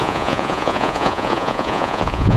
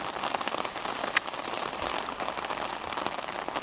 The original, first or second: second